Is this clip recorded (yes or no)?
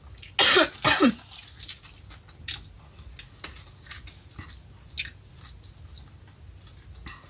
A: yes